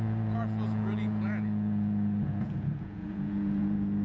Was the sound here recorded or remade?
remade